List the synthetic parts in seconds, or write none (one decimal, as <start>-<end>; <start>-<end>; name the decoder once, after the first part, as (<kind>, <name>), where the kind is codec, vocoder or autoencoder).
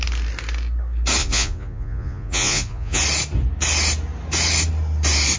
1.2-3.0 (vocoder, Vocos)